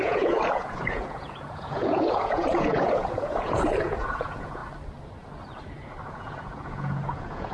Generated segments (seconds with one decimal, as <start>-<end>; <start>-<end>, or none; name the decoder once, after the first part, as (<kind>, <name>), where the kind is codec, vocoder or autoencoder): 0.0-4.6 (vocoder, Vocos); 6.1-7.5